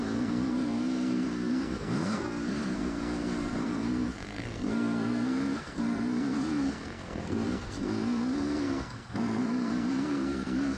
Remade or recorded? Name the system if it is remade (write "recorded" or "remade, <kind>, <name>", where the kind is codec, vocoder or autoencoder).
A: remade, codec, SNAC